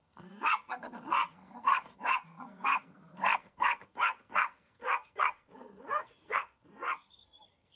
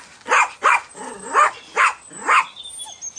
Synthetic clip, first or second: first